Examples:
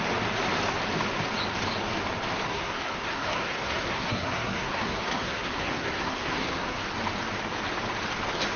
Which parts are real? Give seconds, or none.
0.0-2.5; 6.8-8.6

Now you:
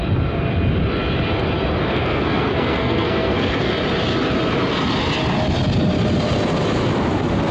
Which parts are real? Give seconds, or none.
0.0-1.8; 3.7-7.5

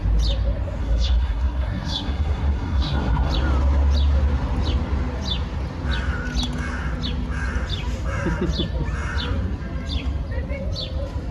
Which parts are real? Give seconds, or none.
0.0-0.8; 3.3-11.3

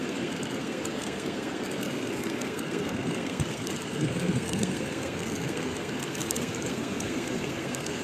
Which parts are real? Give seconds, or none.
none

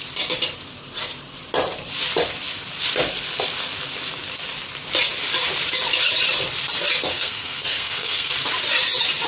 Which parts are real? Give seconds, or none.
0.0-7.1; 8.3-9.3

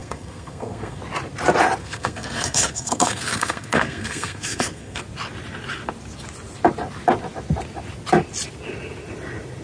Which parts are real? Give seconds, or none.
1.0-1.8; 5.0-9.6

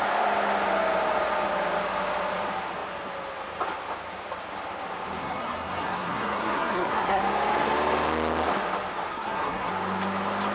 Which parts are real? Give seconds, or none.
0.0-5.2; 7.2-9.1; 9.7-10.5